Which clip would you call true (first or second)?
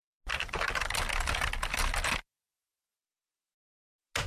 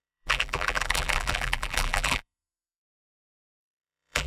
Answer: first